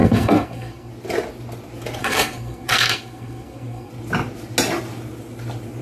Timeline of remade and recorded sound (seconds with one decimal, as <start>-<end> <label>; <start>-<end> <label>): 0.0-0.9 remade; 0.9-2.0 recorded; 2.0-3.9 remade; 3.9-5.8 recorded